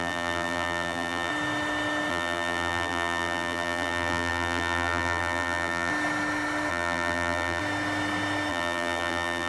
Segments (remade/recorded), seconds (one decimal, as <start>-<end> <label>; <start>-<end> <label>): 0.0-1.3 remade; 1.3-2.1 recorded; 2.1-5.9 remade; 5.9-6.7 recorded; 6.7-7.6 remade; 7.6-8.5 recorded; 8.5-9.5 remade